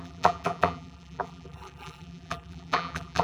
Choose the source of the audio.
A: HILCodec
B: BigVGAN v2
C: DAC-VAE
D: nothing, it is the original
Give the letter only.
B